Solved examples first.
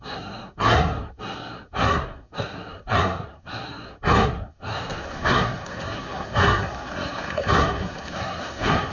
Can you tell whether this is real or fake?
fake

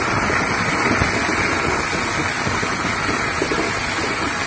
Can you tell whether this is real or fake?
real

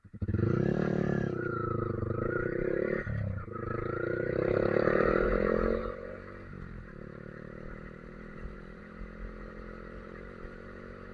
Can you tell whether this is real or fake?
fake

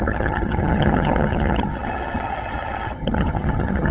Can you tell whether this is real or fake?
fake